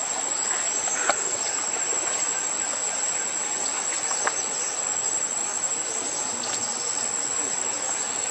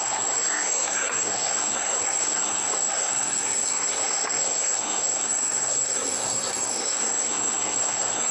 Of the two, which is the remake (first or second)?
second